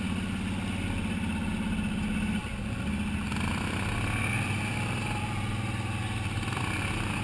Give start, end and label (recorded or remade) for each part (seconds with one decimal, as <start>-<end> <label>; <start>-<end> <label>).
0.0-7.2 recorded